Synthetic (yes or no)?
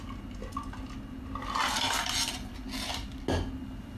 no